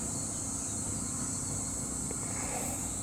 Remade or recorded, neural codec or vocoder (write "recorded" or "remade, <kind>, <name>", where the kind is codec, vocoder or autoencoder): recorded